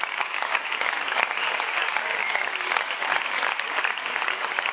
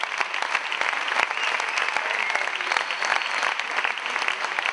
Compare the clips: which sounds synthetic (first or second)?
first